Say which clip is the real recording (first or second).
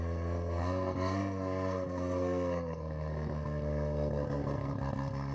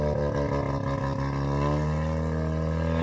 second